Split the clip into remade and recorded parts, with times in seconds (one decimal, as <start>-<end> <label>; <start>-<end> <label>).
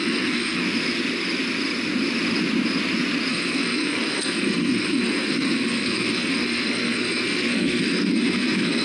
0.0-0.6 remade; 0.6-3.3 recorded; 3.3-8.8 remade